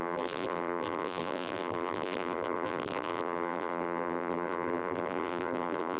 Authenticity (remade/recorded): remade